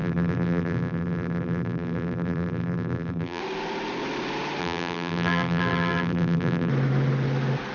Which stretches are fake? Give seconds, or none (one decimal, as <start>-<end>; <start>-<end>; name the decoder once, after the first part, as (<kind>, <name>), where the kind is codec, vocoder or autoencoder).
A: 0.0-3.4 (vocoder, BigVGAN v2); 4.6-6.7